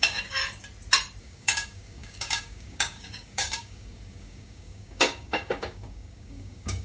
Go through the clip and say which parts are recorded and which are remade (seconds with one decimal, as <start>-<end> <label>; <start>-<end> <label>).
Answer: 0.0-0.4 remade; 0.4-1.2 recorded; 1.2-6.8 remade